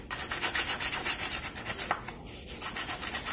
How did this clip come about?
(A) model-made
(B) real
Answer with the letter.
B